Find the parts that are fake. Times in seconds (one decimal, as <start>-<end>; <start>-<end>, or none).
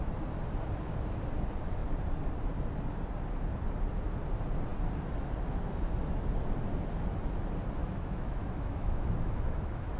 7.8-10.0